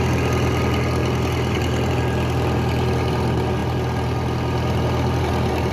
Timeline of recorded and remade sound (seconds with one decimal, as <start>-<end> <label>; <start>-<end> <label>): 0.0-5.7 recorded